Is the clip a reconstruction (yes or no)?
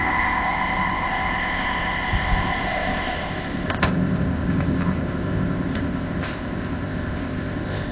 yes